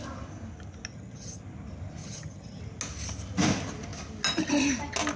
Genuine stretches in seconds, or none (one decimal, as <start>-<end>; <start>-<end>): 0.0-0.9; 1.4-2.0; 2.6-5.2